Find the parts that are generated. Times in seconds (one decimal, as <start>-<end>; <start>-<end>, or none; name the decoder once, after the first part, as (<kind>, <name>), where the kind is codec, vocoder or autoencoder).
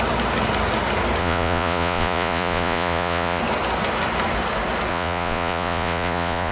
1.2-3.4 (vocoder, Vocos); 4.9-6.5